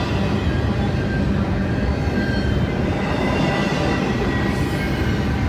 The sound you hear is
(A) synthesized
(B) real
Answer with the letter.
B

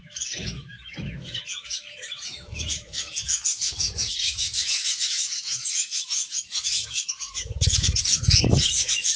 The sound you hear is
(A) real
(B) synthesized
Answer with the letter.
B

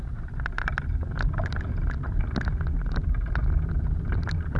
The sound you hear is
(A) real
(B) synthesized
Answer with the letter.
A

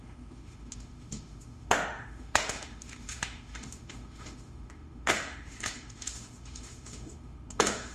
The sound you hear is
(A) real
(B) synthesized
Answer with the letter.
B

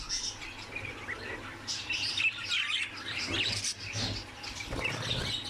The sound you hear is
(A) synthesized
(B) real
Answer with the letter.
B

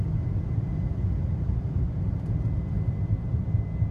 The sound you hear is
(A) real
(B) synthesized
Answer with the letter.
A